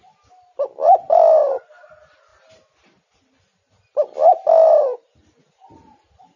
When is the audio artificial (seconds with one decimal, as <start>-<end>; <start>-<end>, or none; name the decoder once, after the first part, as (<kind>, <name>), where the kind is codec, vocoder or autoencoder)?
2.3-6.4 (vocoder, BigVGAN v2)